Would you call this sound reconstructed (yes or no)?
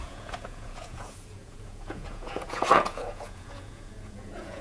yes